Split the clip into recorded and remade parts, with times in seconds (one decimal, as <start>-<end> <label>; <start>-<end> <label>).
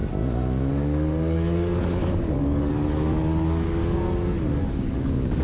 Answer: 0.0-0.7 recorded; 0.7-3.8 remade; 3.8-4.7 recorded; 4.7-5.4 remade